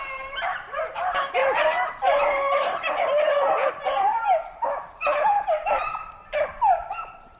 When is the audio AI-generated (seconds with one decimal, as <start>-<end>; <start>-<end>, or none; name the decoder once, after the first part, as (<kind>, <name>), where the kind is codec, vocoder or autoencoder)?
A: 0.0-7.4 (vocoder, BigVGAN v2)